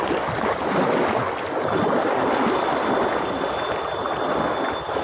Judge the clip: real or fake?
real